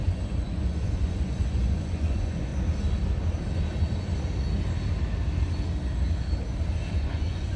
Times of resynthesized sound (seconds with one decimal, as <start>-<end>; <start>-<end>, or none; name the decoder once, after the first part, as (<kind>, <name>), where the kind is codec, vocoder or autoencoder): 0.0-2.5 (vocoder, Vocos); 6.9-7.6